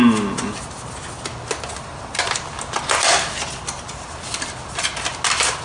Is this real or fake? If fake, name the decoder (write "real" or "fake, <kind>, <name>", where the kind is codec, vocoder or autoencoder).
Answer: real